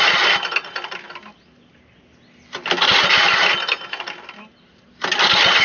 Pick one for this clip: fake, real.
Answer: real